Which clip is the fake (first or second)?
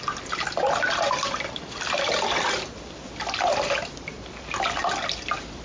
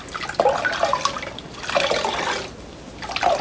first